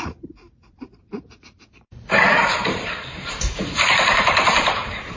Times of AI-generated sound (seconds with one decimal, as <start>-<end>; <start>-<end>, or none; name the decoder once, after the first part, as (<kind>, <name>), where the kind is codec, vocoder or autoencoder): 0.0-5.2 (vocoder, BigVGAN v2)